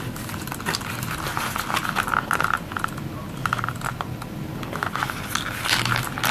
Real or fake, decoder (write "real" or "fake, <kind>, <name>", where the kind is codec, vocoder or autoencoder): real